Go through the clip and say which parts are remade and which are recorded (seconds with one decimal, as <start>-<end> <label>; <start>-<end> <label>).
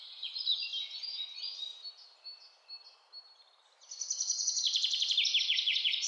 0.0-0.7 remade; 0.7-1.2 recorded; 1.2-1.7 remade; 1.7-5.4 recorded; 5.4-6.1 remade